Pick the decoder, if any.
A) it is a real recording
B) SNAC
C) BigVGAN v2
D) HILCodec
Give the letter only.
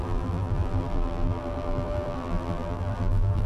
C